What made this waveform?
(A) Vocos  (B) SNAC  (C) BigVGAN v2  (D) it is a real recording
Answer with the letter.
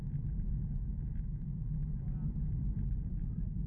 D